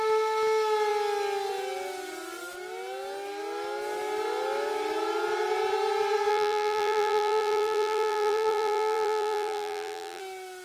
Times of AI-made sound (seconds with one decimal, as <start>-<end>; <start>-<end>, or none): 6.3-10.2